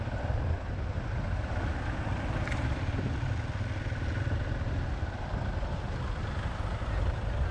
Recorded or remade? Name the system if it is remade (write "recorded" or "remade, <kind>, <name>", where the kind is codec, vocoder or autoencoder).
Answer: recorded